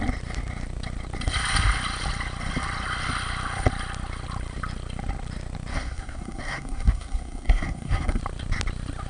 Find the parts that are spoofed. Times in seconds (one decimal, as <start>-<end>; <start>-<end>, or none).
5.7-8.2